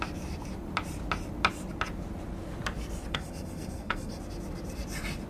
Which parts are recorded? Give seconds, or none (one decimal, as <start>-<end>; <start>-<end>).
0.0-3.1; 4.2-5.3